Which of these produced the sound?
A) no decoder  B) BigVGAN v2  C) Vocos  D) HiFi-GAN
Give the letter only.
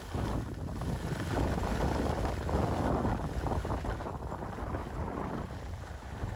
A